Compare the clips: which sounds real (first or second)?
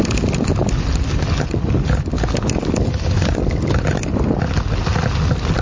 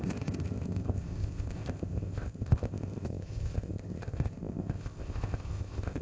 first